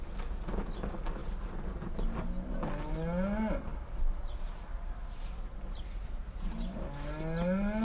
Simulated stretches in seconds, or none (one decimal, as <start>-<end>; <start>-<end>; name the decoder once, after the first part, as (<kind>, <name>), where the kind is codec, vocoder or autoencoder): none